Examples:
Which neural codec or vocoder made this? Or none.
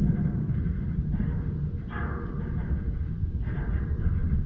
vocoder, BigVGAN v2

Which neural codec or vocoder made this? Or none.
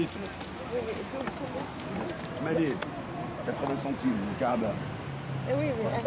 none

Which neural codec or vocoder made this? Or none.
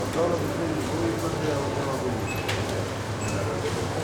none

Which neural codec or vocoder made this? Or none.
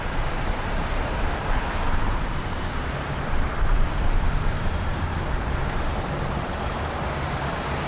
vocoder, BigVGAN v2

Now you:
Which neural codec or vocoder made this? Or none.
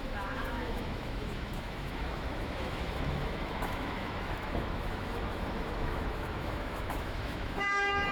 autoencoder, DAC-VAE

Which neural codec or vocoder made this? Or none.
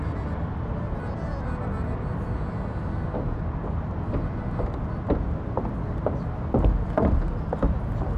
none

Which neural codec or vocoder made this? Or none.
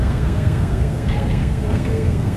codec, SNAC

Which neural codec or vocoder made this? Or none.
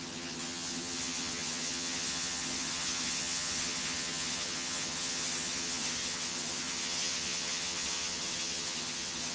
vocoder, HiFi-GAN